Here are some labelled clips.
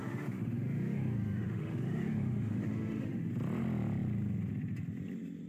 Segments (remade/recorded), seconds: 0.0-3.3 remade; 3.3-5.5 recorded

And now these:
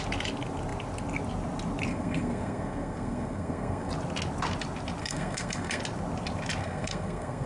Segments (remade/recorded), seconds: 0.0-1.9 recorded; 1.9-3.9 remade; 3.9-5.0 recorded; 5.0-5.8 remade; 5.8-6.6 recorded; 6.6-7.5 remade

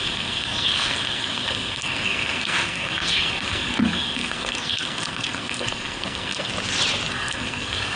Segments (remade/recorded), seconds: 0.0-6.5 remade; 6.5-7.1 recorded; 7.1-8.0 remade

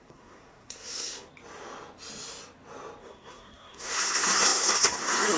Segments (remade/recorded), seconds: 0.0-1.3 remade; 1.3-3.0 recorded; 3.0-5.4 remade